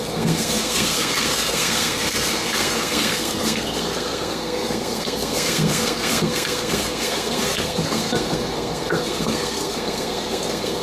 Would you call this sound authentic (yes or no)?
no